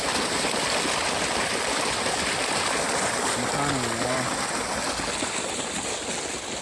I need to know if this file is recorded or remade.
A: recorded